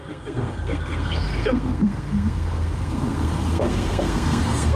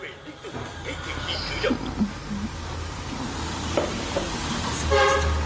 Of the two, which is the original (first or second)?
second